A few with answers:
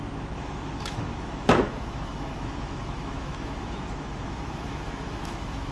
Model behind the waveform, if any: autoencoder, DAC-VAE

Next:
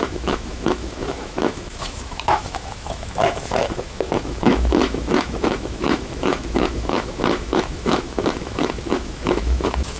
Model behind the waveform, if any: autoencoder, DAC-VAE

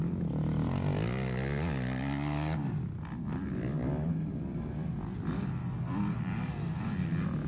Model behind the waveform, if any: none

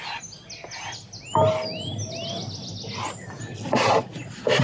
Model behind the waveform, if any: none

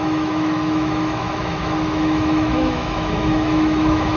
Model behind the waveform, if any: autoencoder, DAC-VAE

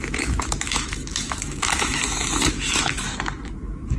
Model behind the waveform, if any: autoencoder, DAC-VAE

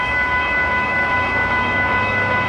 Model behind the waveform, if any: autoencoder, DAC-VAE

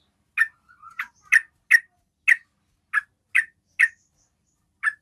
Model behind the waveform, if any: none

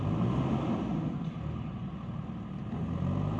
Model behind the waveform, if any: none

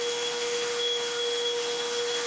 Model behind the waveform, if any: autoencoder, DAC-VAE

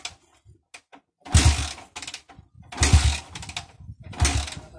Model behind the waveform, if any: none